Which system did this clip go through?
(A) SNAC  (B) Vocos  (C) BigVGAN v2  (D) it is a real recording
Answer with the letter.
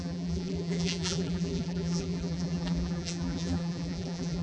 C